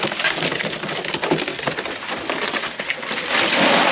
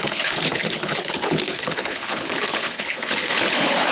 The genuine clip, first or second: first